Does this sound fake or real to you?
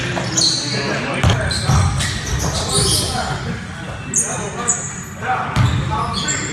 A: real